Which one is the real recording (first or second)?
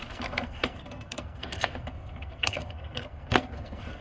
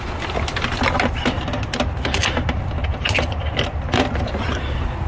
second